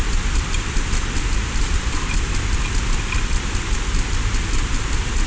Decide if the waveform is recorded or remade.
recorded